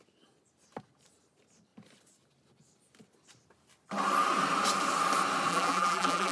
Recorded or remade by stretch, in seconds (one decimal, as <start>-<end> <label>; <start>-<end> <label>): 0.0-5.5 recorded; 5.5-6.3 remade